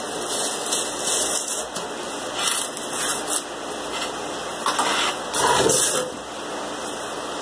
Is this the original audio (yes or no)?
yes